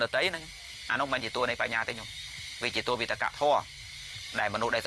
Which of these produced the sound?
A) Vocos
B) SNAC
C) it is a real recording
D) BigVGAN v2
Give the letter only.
D